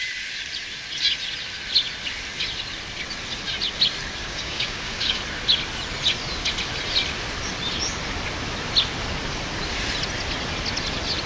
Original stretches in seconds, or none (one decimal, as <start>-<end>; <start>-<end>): 0.0-4.2; 5.2-11.3